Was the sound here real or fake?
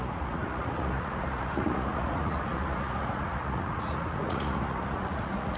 fake